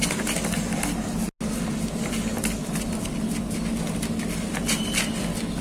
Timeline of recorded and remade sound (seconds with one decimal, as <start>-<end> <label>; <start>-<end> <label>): 0.0-5.6 recorded